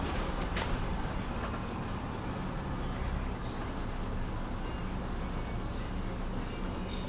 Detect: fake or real real